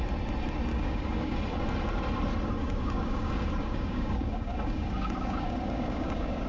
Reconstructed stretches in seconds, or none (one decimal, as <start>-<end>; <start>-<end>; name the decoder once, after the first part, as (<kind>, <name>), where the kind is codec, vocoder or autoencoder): 0.7-1.4 (codec, DAC); 2.6-6.5